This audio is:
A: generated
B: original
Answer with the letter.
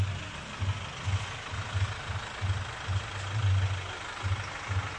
B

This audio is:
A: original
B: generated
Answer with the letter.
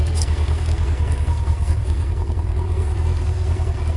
B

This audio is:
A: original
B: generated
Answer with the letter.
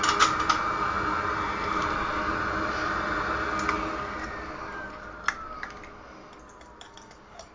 A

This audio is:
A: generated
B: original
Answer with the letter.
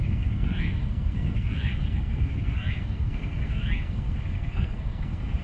A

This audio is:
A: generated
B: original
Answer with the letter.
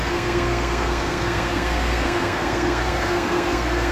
A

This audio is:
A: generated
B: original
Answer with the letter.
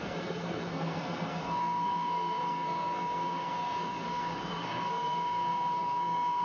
A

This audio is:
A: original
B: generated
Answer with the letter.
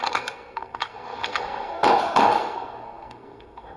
B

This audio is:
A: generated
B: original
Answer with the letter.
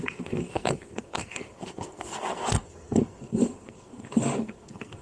A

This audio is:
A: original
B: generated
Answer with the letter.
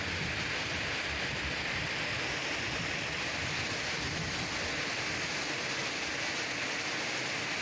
A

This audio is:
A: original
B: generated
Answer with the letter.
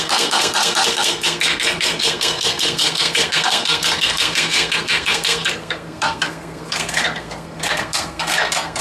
B